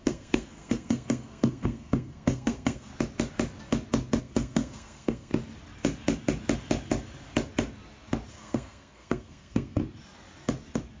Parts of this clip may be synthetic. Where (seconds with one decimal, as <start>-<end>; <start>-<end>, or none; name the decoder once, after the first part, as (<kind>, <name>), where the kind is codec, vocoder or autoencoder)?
0.0-2.9 (codec, SNAC); 4.2-5.3; 8.3-9.8